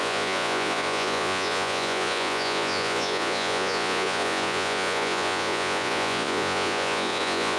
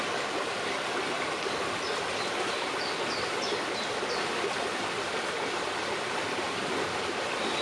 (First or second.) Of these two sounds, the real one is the second